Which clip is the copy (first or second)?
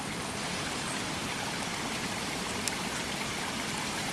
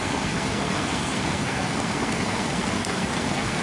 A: second